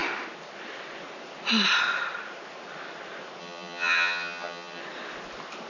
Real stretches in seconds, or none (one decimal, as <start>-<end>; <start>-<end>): 0.0-3.4; 4.8-5.7